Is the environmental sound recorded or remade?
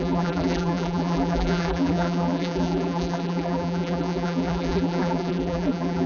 remade